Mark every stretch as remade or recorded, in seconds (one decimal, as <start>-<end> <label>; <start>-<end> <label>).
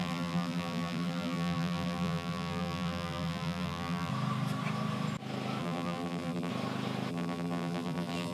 0.0-4.1 remade; 4.1-5.6 recorded; 5.6-6.5 remade; 6.5-7.1 recorded; 7.1-8.3 remade